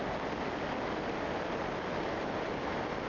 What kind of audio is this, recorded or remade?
recorded